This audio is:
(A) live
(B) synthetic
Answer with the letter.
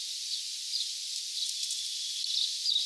A